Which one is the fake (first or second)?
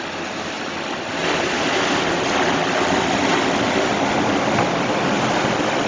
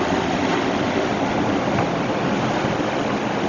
second